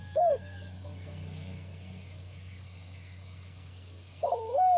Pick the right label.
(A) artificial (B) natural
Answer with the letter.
A